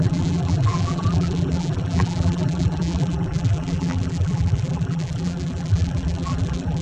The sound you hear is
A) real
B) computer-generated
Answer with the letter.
B